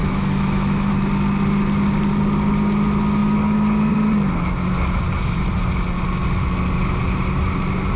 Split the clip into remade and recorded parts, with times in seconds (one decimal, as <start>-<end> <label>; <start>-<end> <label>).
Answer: 0.0-0.9 remade; 0.9-8.0 recorded